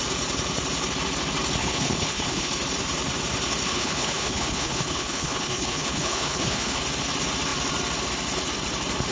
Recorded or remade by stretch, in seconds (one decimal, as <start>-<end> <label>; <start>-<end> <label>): 0.0-1.6 recorded; 1.6-2.5 remade; 2.5-3.7 recorded; 3.7-6.8 remade; 6.8-9.1 recorded